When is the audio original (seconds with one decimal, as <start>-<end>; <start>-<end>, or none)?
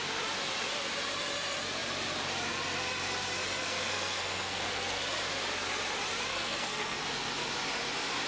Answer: 0.0-3.6; 5.0-6.3; 7.0-8.3